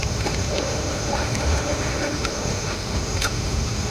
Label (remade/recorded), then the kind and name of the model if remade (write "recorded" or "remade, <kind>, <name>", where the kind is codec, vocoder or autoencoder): remade, autoencoder, DAC-VAE